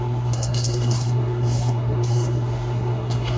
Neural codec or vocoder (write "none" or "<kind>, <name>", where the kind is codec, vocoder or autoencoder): codec, SNAC